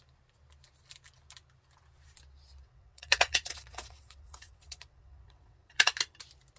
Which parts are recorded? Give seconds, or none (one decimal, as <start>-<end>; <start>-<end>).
0.0-2.6; 5.9-6.6